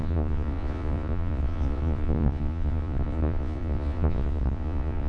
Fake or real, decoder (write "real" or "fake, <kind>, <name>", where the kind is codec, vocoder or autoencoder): fake, vocoder, Vocos